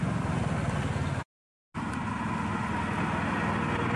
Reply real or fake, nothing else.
real